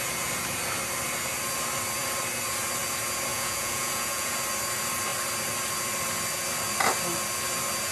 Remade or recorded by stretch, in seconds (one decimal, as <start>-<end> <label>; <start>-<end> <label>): 0.0-3.3 recorded; 3.3-4.3 remade; 4.3-7.9 recorded